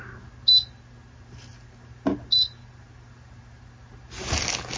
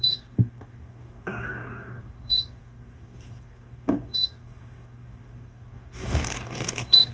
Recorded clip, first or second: first